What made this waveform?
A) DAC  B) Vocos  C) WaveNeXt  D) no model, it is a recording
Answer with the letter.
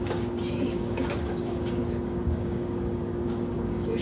A